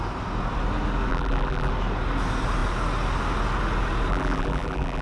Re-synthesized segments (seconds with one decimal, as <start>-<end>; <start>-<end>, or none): 1.1-1.7; 4.1-5.0